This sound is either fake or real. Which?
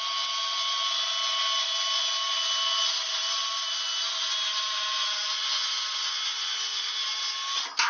real